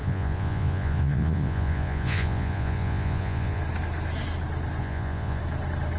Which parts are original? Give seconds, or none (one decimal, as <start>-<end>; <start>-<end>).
3.6-4.8; 5.4-6.0